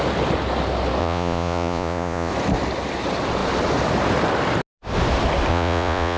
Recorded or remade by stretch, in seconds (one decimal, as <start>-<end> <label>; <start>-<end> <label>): 0.0-1.0 recorded; 1.0-2.3 remade; 2.3-5.5 recorded; 5.5-6.2 remade